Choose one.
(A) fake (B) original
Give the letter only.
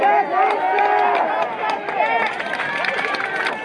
B